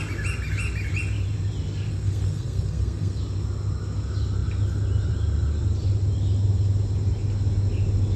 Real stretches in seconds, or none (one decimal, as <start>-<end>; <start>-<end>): 0.0-1.9; 3.2-8.2